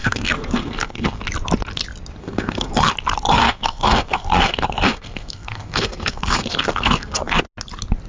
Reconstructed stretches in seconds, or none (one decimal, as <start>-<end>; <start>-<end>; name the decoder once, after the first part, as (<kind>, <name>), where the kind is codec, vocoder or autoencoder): 0.0-1.2 (codec, SNAC); 2.2-2.7; 3.4-7.4